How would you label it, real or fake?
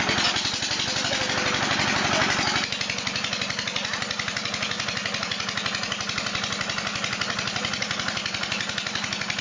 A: real